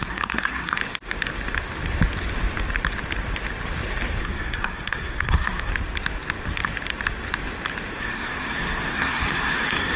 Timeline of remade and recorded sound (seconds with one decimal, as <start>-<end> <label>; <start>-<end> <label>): 0.0-0.8 remade; 0.8-4.2 recorded; 4.2-5.7 remade; 5.7-8.0 recorded; 8.0-10.0 remade